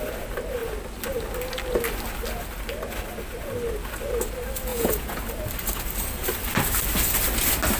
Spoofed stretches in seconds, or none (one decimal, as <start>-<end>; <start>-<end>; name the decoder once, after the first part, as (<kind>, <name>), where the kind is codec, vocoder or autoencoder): 4.7-5.2 (vocoder, Vocos)